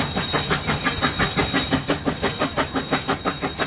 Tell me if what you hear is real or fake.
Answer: real